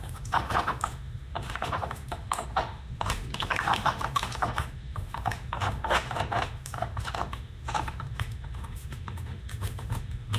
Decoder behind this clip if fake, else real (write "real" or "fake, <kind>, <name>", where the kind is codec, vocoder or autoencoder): fake, autoencoder, DAC-VAE